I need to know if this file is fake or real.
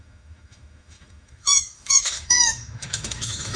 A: fake